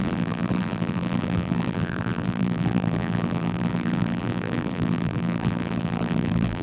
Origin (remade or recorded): remade